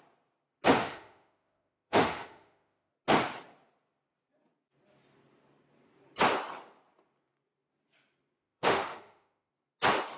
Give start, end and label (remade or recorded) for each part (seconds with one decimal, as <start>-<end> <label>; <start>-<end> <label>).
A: 0.0-0.8 recorded; 0.8-2.9 remade; 2.9-8.4 recorded; 8.4-9.5 remade; 9.5-10.2 recorded